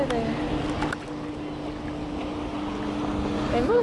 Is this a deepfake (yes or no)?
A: no